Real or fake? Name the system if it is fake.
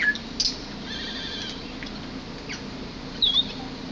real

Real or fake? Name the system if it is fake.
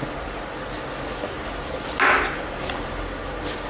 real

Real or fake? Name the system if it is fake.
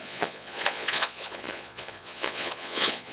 fake, vocoder, Vocos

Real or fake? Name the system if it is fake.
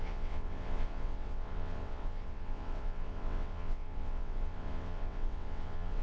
fake, vocoder, WaveNeXt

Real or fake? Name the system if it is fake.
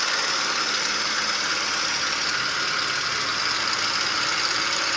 real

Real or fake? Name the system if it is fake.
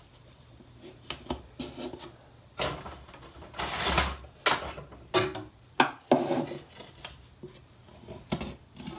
real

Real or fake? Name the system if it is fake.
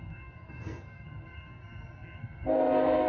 fake, codec, SNAC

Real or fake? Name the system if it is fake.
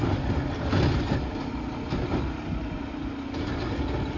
real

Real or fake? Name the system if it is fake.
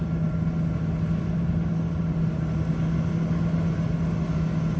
real